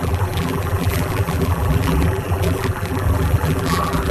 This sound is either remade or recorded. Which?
remade